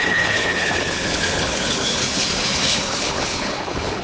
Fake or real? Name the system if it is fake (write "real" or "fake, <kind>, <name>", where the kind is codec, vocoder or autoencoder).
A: fake, codec, HILCodec